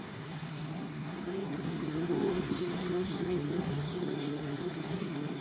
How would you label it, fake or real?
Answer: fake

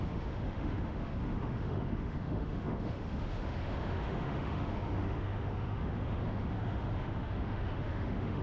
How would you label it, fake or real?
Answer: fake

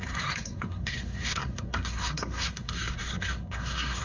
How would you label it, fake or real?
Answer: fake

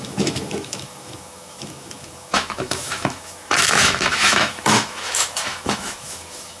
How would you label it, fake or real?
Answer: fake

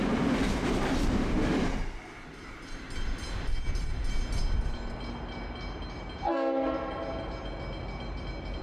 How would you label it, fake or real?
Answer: real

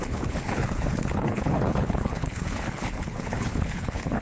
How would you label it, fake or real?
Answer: fake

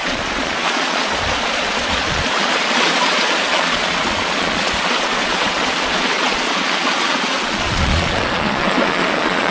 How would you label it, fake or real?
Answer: fake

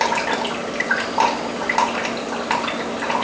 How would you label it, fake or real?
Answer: real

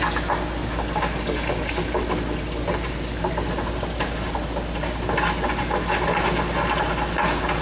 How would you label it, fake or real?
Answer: real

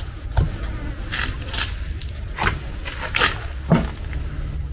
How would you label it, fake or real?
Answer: real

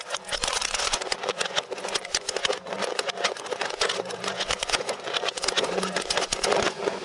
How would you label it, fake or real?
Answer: fake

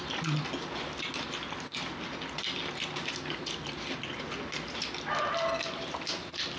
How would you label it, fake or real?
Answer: real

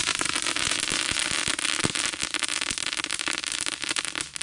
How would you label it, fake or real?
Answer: real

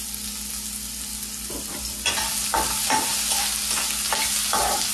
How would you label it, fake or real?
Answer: real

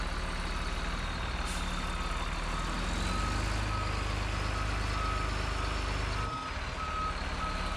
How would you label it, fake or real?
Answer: real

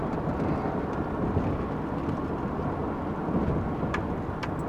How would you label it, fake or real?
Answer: real